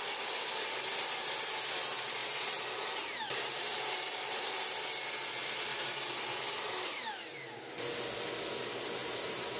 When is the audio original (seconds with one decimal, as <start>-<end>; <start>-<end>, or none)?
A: 0.0-2.2; 4.6-5.7; 6.3-9.0